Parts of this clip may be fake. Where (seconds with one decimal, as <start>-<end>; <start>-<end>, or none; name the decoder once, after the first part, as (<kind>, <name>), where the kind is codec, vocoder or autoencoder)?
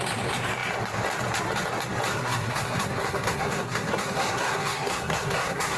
2.1-5.8 (codec, SNAC)